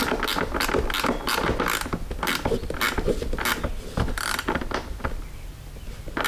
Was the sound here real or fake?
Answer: real